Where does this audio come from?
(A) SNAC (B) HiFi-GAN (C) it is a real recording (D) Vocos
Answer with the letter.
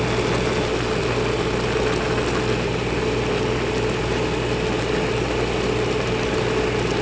C